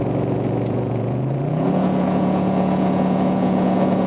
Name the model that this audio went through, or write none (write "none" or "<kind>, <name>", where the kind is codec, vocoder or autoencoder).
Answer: vocoder, Vocos